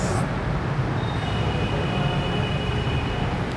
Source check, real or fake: real